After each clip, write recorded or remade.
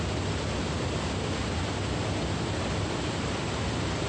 recorded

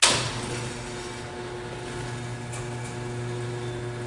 recorded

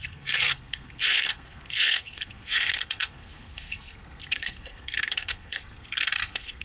remade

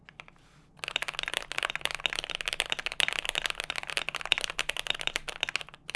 recorded